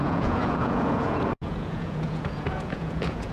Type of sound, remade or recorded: remade